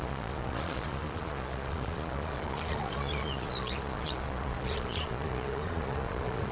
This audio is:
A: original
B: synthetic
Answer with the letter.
B